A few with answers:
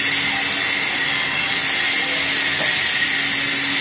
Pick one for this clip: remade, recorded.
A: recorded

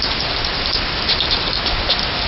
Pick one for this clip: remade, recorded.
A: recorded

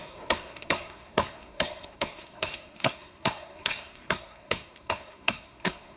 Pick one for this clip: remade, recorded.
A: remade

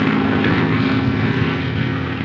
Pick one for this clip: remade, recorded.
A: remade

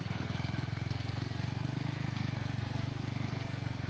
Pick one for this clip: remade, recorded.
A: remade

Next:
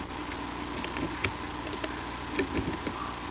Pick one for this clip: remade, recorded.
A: recorded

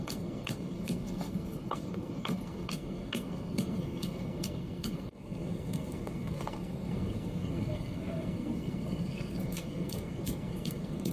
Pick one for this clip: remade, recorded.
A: remade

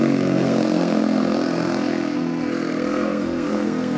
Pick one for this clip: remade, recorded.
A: remade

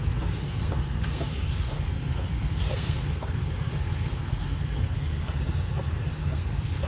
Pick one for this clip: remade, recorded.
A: remade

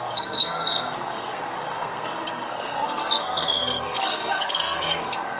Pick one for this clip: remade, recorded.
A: remade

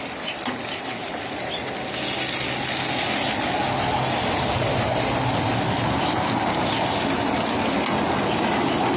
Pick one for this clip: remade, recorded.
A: recorded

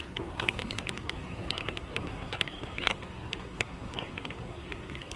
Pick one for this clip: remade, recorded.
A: remade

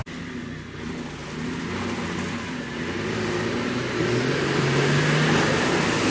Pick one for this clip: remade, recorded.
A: recorded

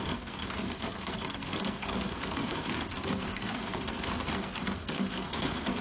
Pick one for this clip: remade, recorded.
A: remade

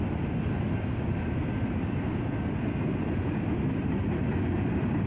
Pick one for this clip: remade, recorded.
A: recorded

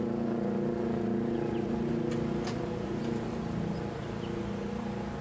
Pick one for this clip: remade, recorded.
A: recorded